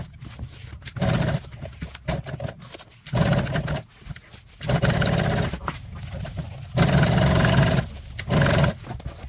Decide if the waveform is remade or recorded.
recorded